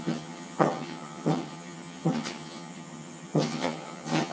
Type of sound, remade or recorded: remade